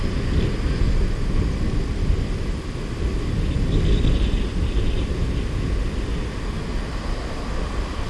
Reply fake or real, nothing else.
real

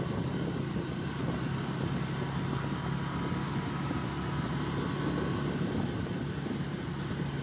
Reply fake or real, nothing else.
real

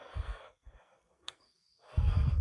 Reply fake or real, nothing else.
fake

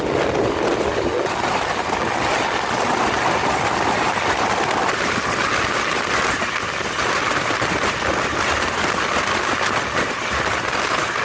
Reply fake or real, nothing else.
real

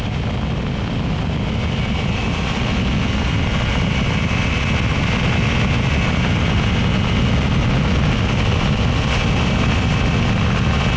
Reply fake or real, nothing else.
real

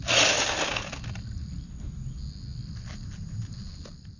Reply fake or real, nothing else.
real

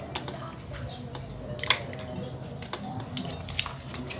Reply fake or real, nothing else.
real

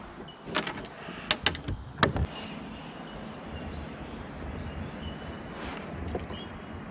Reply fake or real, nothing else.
real